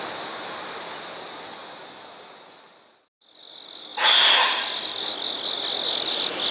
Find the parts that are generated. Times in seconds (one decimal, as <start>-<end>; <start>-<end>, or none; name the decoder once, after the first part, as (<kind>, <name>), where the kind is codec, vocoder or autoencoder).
none